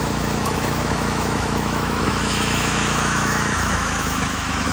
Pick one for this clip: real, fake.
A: fake